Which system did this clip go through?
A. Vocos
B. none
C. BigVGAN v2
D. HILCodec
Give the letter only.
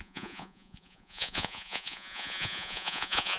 A